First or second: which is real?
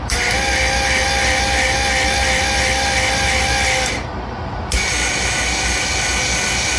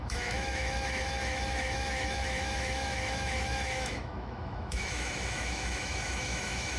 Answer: first